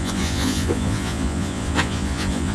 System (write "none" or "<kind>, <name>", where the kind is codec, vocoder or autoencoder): vocoder, Vocos